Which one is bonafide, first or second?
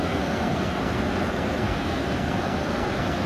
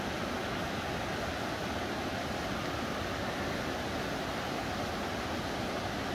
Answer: second